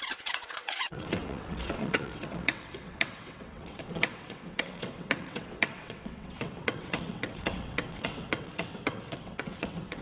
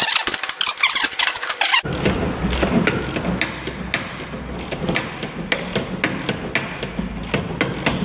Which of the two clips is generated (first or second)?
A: first